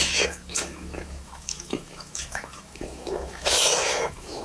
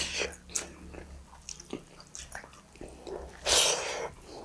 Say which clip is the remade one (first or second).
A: first